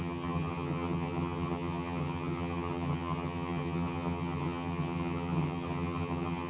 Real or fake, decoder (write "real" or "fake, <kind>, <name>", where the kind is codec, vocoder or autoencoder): fake, vocoder, HiFi-GAN